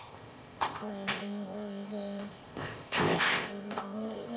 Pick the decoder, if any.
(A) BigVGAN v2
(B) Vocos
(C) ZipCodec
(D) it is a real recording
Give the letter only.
C